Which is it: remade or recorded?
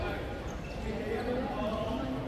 recorded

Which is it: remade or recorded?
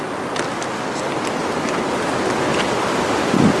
recorded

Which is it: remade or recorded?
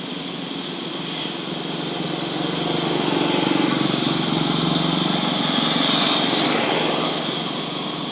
recorded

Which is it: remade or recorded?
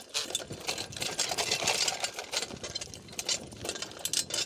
recorded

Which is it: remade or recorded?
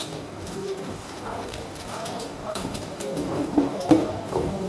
remade